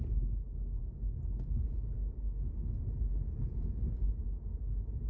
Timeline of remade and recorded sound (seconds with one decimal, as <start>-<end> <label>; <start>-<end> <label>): 0.0-5.1 recorded